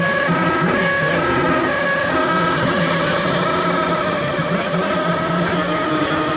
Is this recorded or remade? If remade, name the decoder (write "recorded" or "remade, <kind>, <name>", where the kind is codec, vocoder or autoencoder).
recorded